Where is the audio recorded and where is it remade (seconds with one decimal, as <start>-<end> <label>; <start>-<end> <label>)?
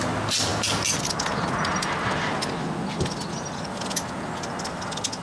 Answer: 0.0-5.2 recorded